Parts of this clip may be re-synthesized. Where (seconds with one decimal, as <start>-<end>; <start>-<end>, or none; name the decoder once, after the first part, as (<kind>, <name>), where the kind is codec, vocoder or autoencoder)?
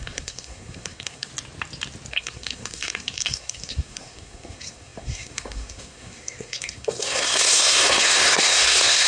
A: 0.0-1.3 (codec, SNAC); 2.1-9.1